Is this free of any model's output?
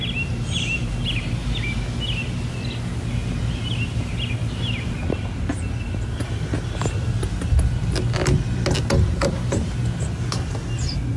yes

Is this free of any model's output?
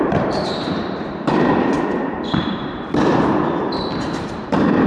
no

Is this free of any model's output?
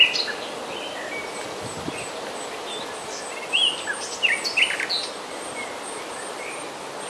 yes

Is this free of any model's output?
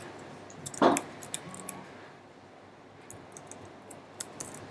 yes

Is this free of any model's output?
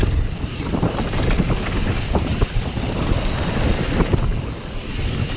yes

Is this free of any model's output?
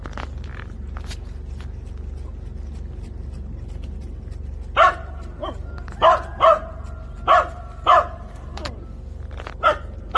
yes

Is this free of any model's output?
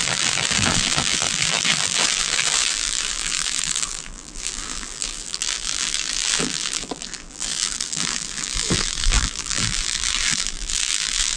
no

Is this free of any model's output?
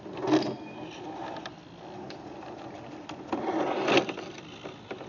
yes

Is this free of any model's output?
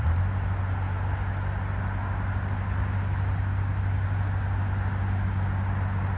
yes